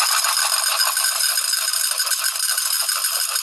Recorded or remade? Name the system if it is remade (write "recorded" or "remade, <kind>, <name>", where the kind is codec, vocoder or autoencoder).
recorded